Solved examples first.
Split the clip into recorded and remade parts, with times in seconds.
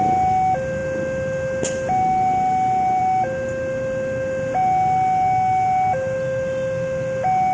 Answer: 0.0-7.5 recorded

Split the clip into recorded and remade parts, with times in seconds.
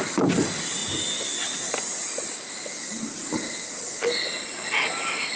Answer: 0.0-5.4 recorded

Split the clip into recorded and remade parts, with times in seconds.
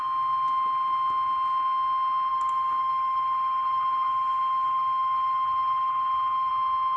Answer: 0.0-2.3 recorded; 2.3-6.5 remade; 6.5-7.0 recorded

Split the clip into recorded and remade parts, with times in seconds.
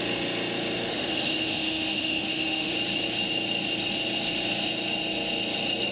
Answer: 0.0-0.9 recorded; 0.9-2.7 remade; 2.7-5.9 recorded